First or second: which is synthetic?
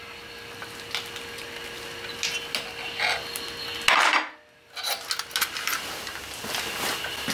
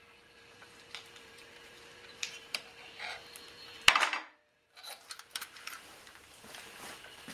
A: second